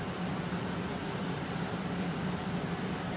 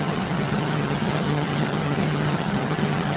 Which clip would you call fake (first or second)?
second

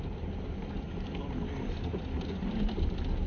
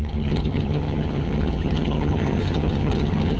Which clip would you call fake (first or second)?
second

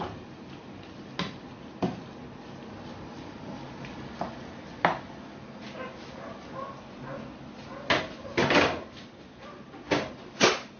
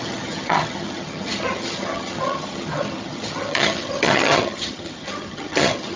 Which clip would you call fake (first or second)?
second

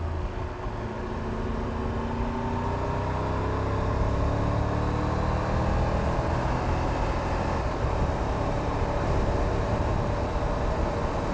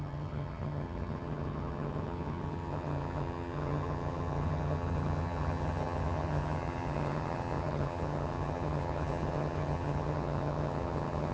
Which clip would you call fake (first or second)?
second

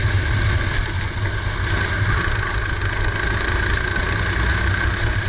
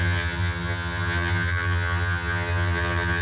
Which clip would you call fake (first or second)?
second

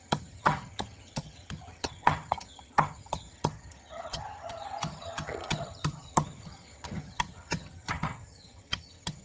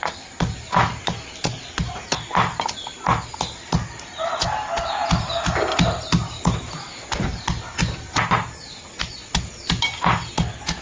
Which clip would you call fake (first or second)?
first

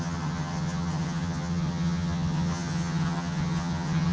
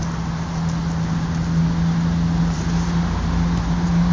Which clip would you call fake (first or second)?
first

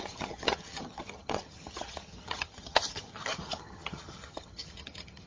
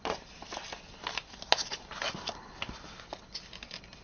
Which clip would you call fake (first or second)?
first